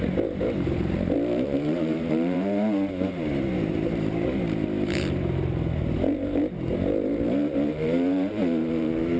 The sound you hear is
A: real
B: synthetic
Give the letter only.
B